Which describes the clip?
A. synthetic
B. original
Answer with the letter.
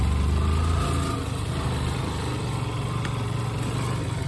B